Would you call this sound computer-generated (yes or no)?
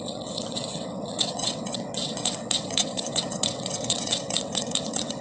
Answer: yes